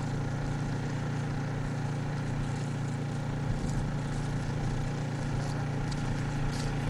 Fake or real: real